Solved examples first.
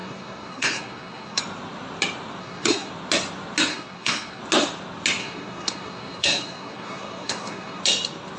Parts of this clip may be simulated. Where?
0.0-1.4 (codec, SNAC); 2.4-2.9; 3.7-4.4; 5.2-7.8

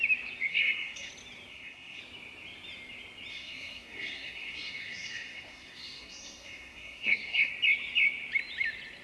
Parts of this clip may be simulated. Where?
0.5-1.1 (codec, SNAC); 1.5-2.0; 3.3-7.5

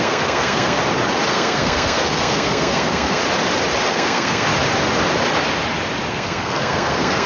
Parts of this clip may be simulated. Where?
0.0-0.8 (codec, SNAC); 1.3-3.2; 3.8-4.5; 6.1-7.3

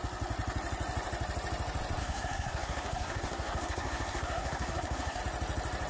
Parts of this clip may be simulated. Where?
2.0-5.2 (codec, SNAC)

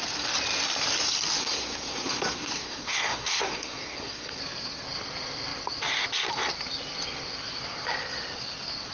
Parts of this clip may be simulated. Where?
1.4-4.4 (codec, SNAC)

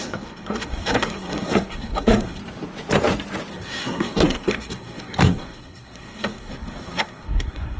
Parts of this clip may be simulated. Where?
0.0-2.4 (codec, SNAC); 3.5-7.8